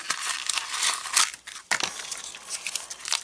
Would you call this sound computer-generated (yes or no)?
no